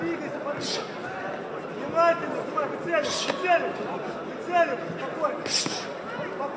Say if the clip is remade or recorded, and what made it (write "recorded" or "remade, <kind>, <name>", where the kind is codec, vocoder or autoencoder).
recorded